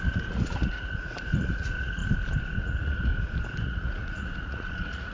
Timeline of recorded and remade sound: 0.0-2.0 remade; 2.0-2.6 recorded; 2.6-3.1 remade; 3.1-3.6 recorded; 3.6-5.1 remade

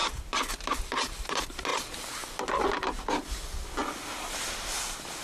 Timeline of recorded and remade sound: 0.0-5.2 recorded

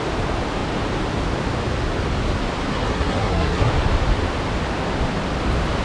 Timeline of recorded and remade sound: 0.0-2.7 recorded; 2.7-3.7 remade; 3.7-5.8 recorded

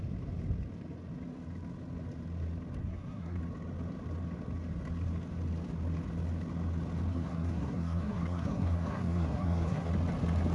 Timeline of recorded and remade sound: 0.0-2.8 recorded; 2.8-3.4 remade; 3.4-7.1 recorded; 7.1-9.9 remade; 9.9-10.5 recorded

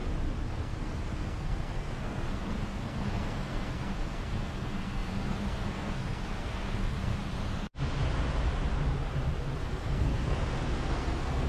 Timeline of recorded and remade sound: 0.0-0.5 recorded; 0.5-7.2 remade; 7.2-9.6 recorded; 9.6-11.5 remade

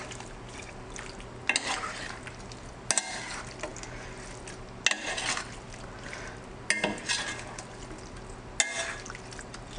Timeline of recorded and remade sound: 0.0-9.8 recorded